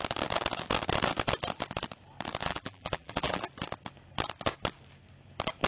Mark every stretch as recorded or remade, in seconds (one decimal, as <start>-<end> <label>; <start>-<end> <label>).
0.0-2.4 recorded; 2.4-3.4 remade; 3.4-5.7 recorded